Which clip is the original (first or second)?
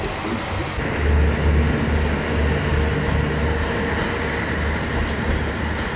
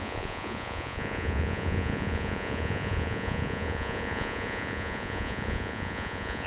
first